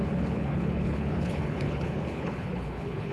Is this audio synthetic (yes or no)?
yes